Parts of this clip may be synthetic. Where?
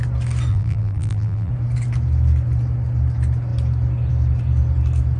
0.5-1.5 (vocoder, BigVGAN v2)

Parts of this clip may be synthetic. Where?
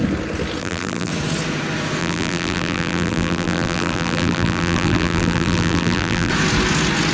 0.6-1.1 (vocoder, BigVGAN v2); 2.0-6.3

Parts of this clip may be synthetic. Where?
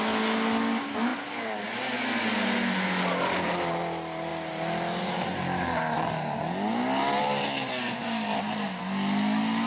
1.1-1.6 (vocoder, BigVGAN v2)